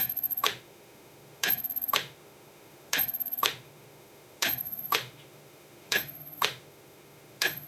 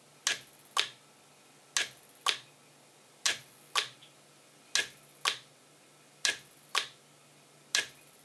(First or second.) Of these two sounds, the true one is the second